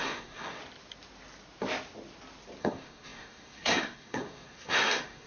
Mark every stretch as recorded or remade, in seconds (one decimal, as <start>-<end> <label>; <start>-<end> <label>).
0.0-0.6 remade; 0.6-2.6 recorded; 2.6-5.3 remade